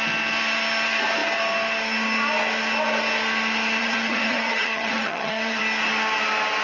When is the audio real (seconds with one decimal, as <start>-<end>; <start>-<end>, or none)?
0.0-3.8; 5.6-6.6